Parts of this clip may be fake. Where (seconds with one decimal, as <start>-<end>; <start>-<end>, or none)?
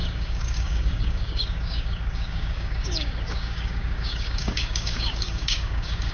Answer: 0.0-6.1